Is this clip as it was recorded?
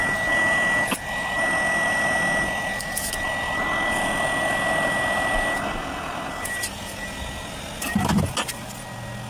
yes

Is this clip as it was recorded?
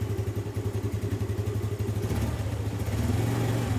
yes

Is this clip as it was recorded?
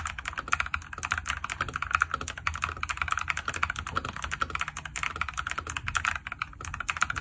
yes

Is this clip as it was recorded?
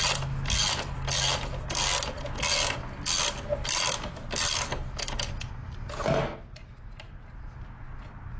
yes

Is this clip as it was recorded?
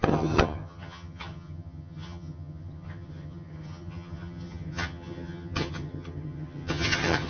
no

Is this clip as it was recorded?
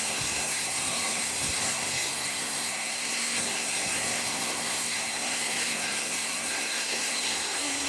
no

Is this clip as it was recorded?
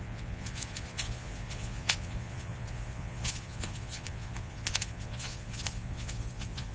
no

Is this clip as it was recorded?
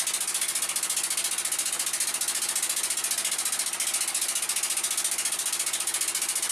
yes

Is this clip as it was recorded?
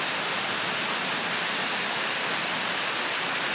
yes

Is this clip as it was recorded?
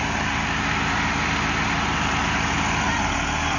yes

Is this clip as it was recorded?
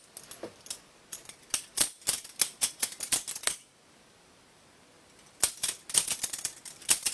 yes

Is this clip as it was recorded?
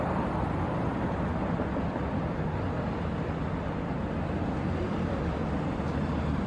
yes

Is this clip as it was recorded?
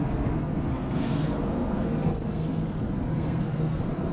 no